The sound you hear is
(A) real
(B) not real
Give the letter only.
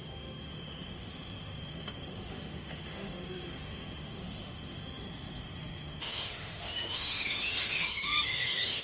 B